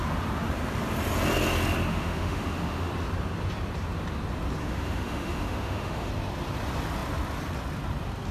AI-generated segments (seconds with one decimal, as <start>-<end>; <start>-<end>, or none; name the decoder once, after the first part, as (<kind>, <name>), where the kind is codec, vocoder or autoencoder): 1.9-2.9 (autoencoder, DAC-VAE); 4.6-6.1